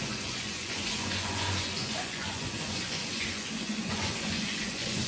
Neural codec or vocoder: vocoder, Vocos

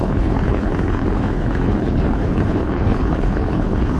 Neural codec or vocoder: codec, HILCodec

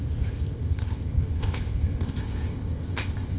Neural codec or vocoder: codec, ZipCodec